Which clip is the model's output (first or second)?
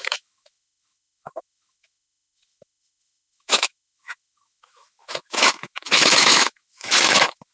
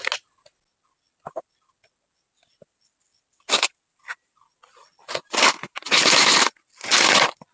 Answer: first